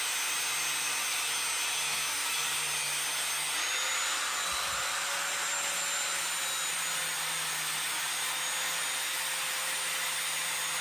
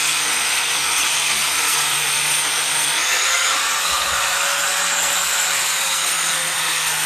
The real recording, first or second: first